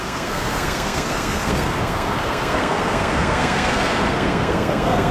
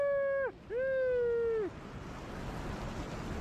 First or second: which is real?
second